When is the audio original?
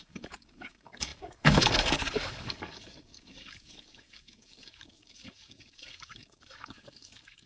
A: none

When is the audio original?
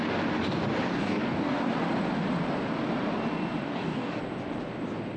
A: 0.0-0.9; 1.7-3.6; 4.2-5.2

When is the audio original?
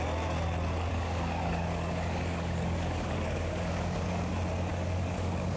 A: 0.0-0.9; 4.3-4.7